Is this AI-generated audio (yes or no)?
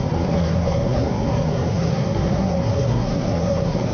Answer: yes